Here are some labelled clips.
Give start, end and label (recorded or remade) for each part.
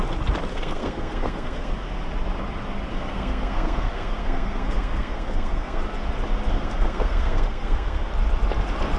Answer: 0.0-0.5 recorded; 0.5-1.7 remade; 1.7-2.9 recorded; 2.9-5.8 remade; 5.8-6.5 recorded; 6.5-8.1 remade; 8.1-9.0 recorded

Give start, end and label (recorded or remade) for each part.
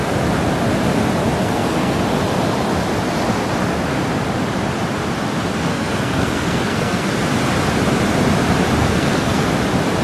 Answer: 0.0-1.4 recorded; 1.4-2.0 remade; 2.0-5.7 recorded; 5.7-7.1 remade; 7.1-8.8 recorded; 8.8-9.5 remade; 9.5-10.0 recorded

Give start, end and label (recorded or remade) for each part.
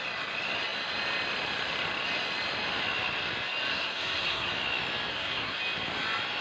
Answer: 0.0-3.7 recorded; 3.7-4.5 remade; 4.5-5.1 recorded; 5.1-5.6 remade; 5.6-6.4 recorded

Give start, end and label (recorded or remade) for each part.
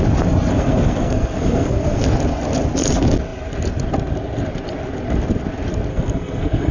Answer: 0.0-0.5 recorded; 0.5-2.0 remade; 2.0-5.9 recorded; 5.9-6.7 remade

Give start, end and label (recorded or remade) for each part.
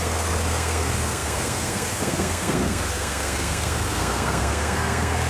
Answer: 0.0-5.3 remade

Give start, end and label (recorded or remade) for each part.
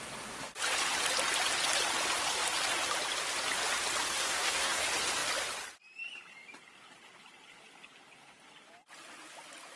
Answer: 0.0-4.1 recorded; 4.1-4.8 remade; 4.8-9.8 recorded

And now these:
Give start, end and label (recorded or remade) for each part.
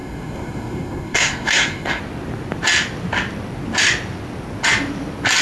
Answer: 0.0-2.0 remade; 2.0-5.4 recorded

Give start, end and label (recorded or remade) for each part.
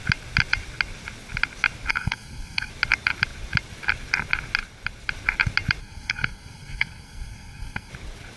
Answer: 0.0-1.9 recorded; 1.9-2.7 remade; 2.7-5.8 recorded; 5.8-7.9 remade; 7.9-8.4 recorded